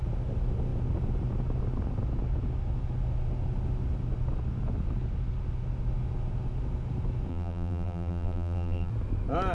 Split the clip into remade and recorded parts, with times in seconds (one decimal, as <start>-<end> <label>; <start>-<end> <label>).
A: 0.0-7.3 recorded; 7.3-8.9 remade; 8.9-9.5 recorded